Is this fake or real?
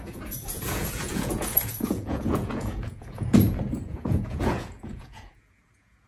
fake